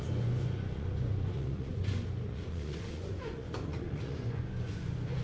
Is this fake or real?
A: fake